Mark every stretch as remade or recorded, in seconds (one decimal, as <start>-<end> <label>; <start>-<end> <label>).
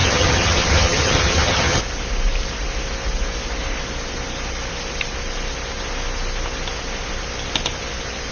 0.0-1.8 remade; 1.8-8.3 recorded